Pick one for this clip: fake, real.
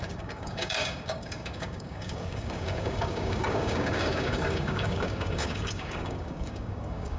fake